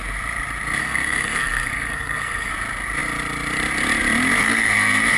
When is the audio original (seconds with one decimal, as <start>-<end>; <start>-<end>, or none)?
0.0-0.8; 2.5-4.4